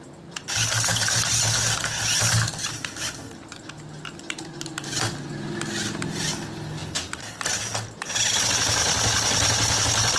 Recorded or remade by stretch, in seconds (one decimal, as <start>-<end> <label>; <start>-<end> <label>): 0.0-10.2 recorded

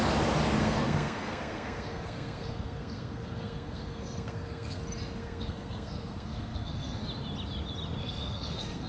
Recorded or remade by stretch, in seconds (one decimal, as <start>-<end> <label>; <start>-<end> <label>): 0.0-0.6 recorded; 0.6-4.8 remade; 4.8-5.2 recorded; 5.2-7.0 remade; 7.0-8.0 recorded; 8.0-8.9 remade

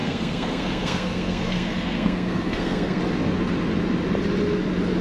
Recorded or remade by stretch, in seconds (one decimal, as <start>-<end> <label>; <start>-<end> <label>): 0.0-3.0 remade; 3.0-5.0 recorded

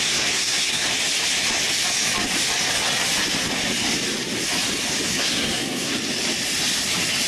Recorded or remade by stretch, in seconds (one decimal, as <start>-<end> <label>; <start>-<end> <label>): 0.0-0.9 remade; 0.9-5.1 recorded; 5.1-5.9 remade; 5.9-7.3 recorded

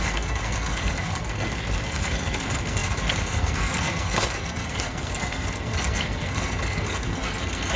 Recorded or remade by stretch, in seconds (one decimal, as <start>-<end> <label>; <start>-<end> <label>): 0.0-7.8 remade

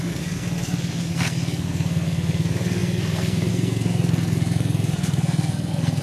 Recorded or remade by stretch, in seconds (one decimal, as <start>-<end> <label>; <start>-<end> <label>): 0.0-6.0 remade

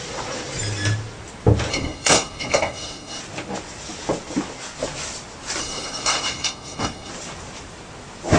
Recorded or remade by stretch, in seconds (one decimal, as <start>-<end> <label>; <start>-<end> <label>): 0.0-1.7 recorded; 1.7-3.2 remade; 3.2-5.6 recorded; 5.6-7.1 remade; 7.1-8.4 recorded

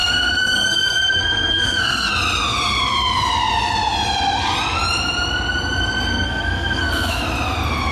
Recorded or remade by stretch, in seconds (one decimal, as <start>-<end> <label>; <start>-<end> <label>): 0.0-2.1 remade; 2.1-6.1 recorded; 6.1-7.2 remade; 7.2-7.9 recorded